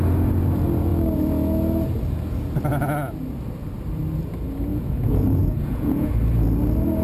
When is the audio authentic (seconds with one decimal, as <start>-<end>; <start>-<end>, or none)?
0.0-4.7; 6.1-7.0